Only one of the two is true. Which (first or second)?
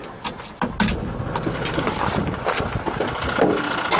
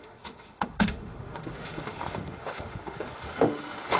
first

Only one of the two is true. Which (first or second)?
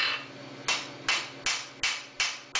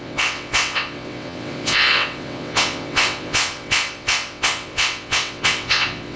first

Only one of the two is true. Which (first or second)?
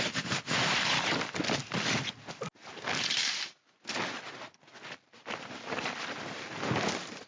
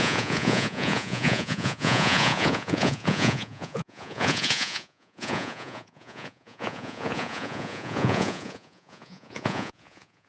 first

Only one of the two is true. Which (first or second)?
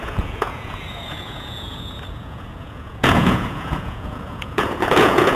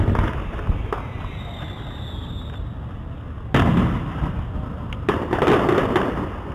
second